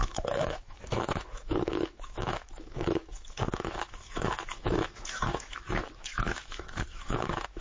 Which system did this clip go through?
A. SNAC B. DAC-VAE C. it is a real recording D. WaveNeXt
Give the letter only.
B